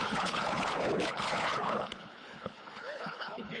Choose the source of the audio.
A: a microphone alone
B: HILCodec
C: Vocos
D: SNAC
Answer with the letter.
B